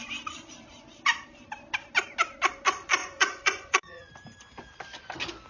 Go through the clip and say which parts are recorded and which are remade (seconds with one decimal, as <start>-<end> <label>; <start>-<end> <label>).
0.0-3.0 recorded; 3.0-4.1 remade; 4.1-5.5 recorded